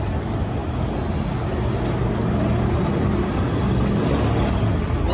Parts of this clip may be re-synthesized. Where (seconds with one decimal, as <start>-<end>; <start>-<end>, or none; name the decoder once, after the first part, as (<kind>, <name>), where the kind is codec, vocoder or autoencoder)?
none